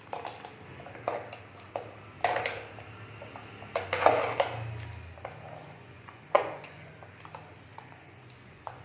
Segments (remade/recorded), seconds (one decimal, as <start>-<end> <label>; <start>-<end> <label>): 0.0-5.6 recorded; 5.6-6.9 remade; 6.9-7.7 recorded; 7.7-8.8 remade